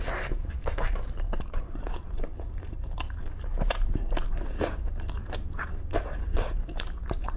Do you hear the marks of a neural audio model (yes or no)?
yes